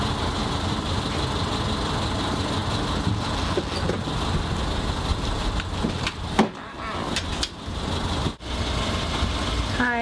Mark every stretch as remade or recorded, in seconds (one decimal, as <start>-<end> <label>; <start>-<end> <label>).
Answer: 0.0-10.0 recorded

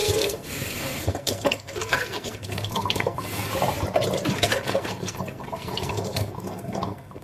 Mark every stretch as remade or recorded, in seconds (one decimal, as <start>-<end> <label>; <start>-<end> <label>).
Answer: 0.0-3.5 remade; 3.5-4.3 recorded; 4.3-7.2 remade